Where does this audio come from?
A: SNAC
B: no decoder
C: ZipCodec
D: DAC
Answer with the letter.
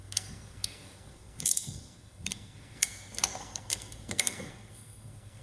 A